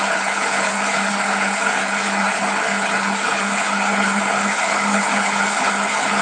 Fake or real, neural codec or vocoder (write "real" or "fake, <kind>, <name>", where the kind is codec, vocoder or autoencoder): fake, codec, HILCodec